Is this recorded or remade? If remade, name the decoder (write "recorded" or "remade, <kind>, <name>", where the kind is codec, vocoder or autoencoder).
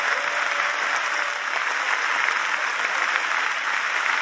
recorded